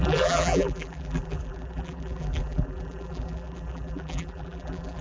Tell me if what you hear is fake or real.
fake